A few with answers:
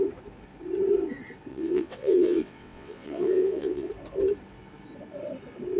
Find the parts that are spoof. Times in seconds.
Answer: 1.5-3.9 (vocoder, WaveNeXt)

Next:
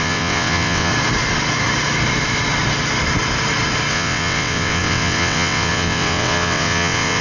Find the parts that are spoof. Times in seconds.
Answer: 0.0-0.9 (vocoder, WaveNeXt); 3.9-7.2

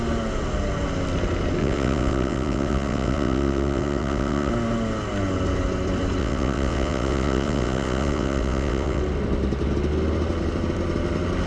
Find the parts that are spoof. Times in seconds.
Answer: 1.6-4.5 (vocoder, WaveNeXt); 6.2-9.0

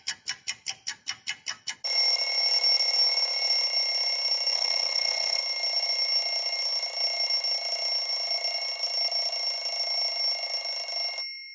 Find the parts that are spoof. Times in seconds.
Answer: 4.5-5.4 (vocoder, WaveNeXt)

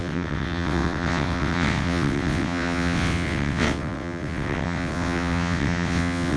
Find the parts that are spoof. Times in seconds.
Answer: 0.0-6.4 (vocoder, WaveNeXt)

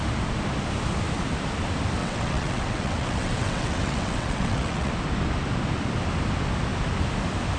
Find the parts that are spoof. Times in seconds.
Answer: 2.0-4.9 (vocoder, WaveNeXt)